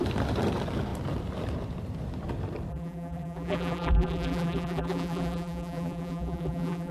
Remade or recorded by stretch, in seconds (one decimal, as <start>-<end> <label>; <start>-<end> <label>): 0.0-2.7 recorded; 2.7-6.9 remade